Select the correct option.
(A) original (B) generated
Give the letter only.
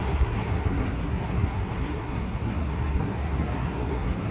B